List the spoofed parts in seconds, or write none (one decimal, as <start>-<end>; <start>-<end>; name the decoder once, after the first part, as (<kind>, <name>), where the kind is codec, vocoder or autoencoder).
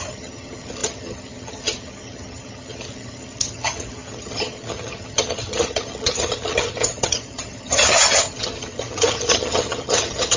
0.0-10.4 (vocoder, HiFi-GAN)